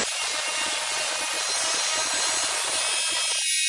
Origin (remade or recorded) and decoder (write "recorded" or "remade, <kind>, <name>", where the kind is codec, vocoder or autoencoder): recorded